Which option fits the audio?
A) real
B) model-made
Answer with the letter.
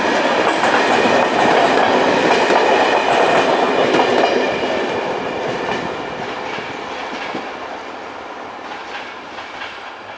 A